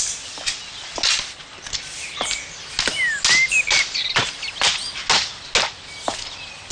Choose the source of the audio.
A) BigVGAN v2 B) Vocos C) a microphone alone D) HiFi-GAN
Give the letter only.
C